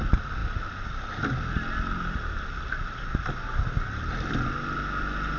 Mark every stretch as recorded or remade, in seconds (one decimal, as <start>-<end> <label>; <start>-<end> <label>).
0.0-5.4 recorded